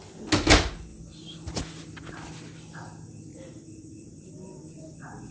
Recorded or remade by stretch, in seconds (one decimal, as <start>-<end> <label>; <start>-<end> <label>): 0.0-3.3 recorded; 3.3-4.3 remade; 4.3-5.3 recorded